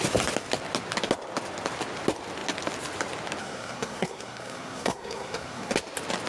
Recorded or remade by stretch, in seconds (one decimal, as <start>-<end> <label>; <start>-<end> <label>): 0.0-3.4 recorded; 3.4-5.7 remade; 5.7-6.3 recorded